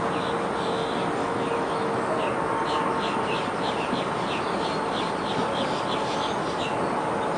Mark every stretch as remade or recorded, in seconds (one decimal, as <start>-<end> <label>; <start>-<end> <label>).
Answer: 0.0-1.2 recorded; 1.2-2.1 remade; 2.1-7.4 recorded